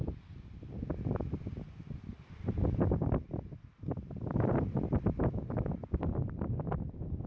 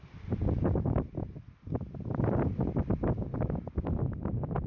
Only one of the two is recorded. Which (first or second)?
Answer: second